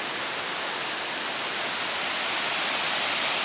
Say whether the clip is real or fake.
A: real